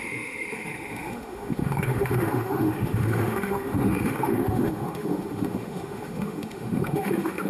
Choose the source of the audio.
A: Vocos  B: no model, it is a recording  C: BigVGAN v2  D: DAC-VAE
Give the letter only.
D